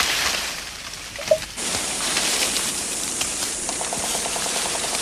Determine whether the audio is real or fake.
fake